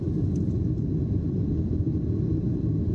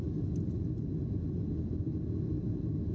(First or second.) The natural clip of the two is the second